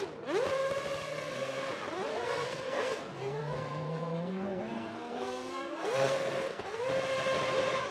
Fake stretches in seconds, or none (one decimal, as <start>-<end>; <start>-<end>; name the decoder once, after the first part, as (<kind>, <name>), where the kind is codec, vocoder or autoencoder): 1.1-1.7 (codec, SNAC); 2.1-6.8

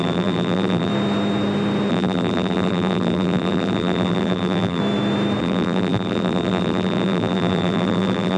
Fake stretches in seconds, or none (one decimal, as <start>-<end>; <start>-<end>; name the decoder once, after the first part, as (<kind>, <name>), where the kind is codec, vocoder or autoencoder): 0.0-0.9 (vocoder, BigVGAN v2); 1.9-4.8; 5.4-8.4

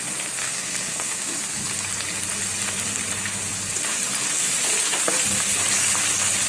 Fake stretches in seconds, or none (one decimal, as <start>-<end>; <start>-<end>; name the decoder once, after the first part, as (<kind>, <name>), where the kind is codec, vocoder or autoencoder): 0.4-1.3 (codec, SNAC)